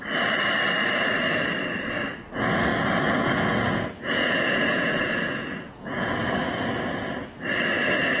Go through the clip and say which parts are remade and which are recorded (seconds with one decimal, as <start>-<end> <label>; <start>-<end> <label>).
0.0-2.7 recorded; 2.7-6.2 remade; 6.2-8.2 recorded